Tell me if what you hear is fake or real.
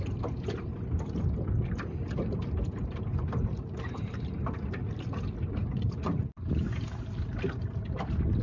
real